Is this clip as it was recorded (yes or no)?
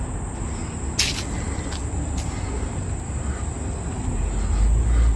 yes